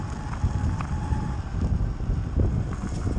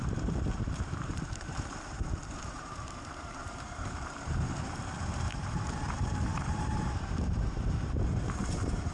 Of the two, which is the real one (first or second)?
first